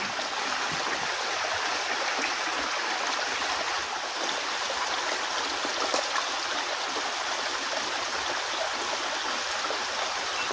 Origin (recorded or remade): recorded